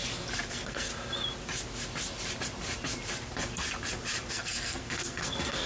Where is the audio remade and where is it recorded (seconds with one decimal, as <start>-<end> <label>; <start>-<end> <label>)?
0.0-0.5 recorded; 0.5-0.9 remade; 0.9-4.3 recorded; 4.3-5.7 remade